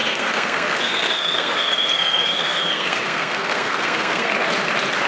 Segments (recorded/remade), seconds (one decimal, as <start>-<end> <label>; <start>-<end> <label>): 0.0-4.3 remade; 4.3-5.1 recorded

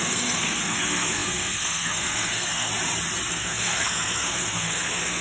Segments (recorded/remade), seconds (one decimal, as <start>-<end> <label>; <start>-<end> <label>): 0.0-2.7 remade; 2.7-3.3 recorded; 3.3-5.2 remade

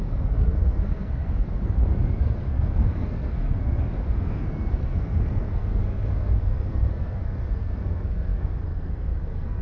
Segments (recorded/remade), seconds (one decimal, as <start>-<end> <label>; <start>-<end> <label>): 0.0-9.6 remade

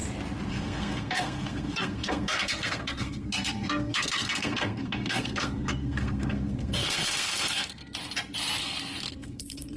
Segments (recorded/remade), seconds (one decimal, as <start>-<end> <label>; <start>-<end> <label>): 0.0-0.5 recorded; 0.5-7.8 remade; 7.8-8.6 recorded; 8.6-9.8 remade